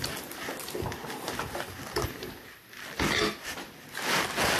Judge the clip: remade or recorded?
recorded